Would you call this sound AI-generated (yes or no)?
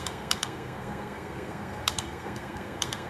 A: yes